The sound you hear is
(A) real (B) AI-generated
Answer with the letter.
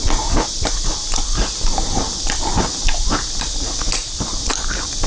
A